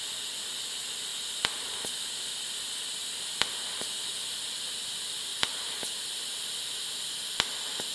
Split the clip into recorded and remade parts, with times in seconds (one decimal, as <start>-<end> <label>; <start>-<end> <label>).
0.0-7.9 recorded